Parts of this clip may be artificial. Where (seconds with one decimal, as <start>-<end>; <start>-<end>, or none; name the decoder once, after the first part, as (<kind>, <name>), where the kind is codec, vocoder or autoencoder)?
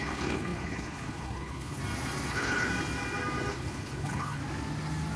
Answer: 0.0-1.8 (codec, HILCodec); 2.3-2.7; 3.5-4.4